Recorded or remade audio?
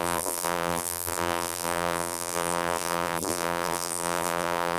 remade